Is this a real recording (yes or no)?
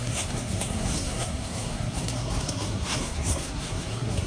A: no